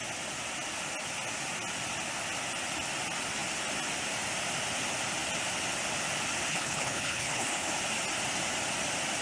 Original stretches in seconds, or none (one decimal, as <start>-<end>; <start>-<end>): 0.0-6.5; 7.7-9.2